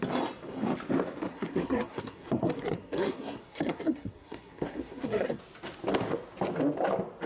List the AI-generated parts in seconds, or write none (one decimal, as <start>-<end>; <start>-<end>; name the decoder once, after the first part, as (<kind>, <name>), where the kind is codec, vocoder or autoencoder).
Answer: 1.3-5.4 (codec, SNAC)